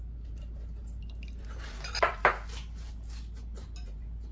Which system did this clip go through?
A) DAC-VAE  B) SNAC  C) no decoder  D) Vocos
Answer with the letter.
C